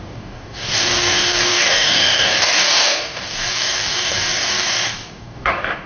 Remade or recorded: remade